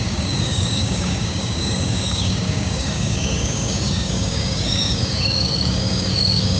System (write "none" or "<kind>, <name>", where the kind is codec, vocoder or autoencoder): codec, DAC